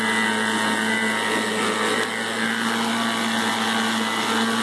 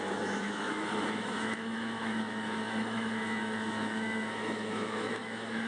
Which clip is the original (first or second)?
first